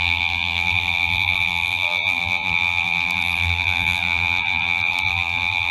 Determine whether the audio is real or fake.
fake